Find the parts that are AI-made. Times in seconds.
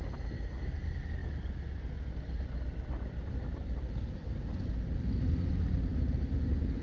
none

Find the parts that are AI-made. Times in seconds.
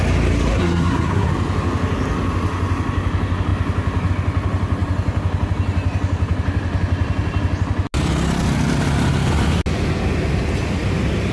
0.5-1.3 (codec, SNAC)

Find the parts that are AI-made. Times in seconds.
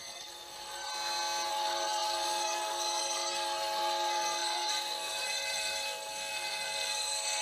0.0-0.9 (codec, SNAC); 1.5-7.4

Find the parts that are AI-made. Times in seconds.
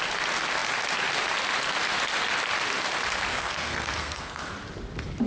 3.3-4.4 (codec, SNAC)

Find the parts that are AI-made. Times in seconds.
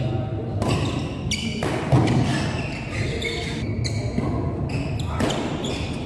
none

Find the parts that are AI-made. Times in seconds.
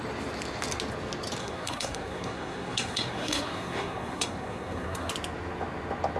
1.4-5.1 (codec, SNAC)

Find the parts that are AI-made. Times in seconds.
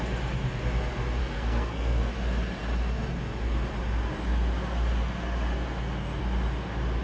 1.2-2.1 (codec, SNAC)